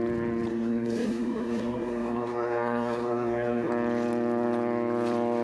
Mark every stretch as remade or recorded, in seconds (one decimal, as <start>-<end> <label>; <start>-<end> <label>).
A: 0.0-0.5 recorded; 0.5-3.7 remade; 3.7-5.4 recorded